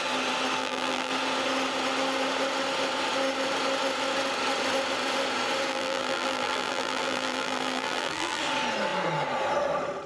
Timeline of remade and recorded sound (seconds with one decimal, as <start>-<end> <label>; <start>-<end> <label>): 0.0-0.6 recorded; 0.6-1.1 remade; 1.1-5.7 recorded; 5.7-8.4 remade; 8.4-10.1 recorded